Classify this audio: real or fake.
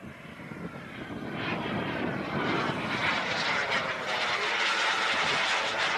fake